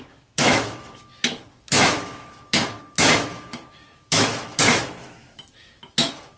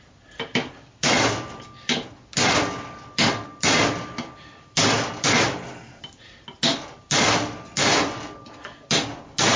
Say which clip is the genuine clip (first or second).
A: second